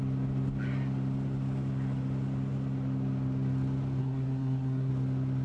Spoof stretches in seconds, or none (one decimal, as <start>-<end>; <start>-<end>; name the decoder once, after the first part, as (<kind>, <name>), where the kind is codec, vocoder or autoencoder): 4.0-4.9 (codec, SNAC)